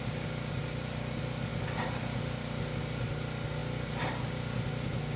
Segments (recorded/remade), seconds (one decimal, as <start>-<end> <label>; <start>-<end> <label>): 0.0-5.2 recorded